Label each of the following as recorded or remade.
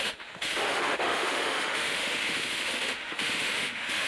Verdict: remade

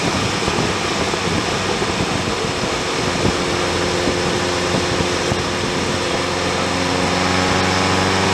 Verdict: recorded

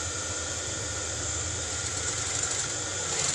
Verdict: remade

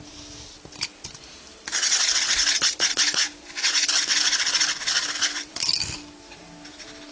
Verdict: recorded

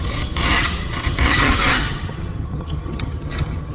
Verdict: remade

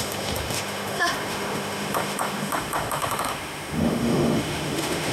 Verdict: remade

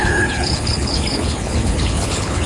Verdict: remade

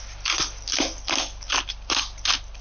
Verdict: recorded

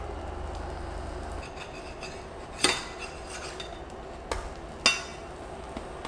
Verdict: recorded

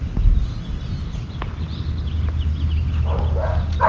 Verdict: recorded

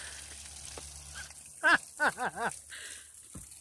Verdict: recorded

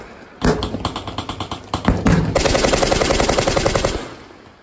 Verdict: recorded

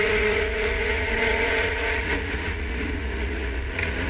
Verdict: remade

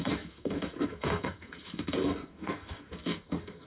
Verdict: remade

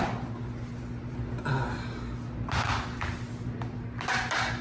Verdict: recorded